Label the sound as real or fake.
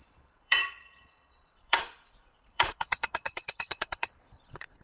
fake